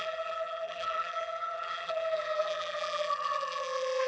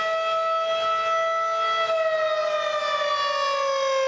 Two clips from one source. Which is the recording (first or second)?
second